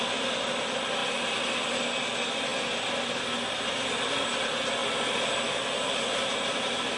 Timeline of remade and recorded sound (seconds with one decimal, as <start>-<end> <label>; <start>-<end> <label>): 0.0-7.0 recorded